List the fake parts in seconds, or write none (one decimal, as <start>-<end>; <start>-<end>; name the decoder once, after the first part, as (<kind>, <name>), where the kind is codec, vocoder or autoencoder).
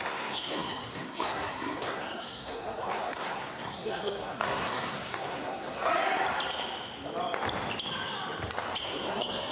0.0-5.9 (codec, SNAC); 8.8-9.5